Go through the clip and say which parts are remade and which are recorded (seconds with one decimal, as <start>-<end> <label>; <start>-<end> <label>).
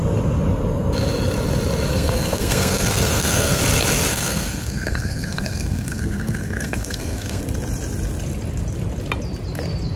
0.0-1.9 recorded; 1.9-3.6 remade; 3.6-4.1 recorded; 4.1-7.4 remade; 7.4-10.0 recorded